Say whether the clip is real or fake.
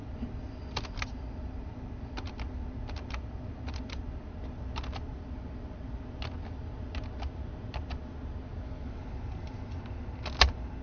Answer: real